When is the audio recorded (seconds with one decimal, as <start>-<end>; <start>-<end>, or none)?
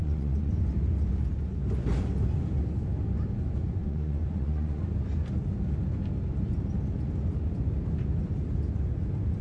0.5-3.8; 4.8-9.4